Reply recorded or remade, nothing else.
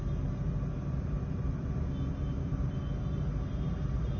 recorded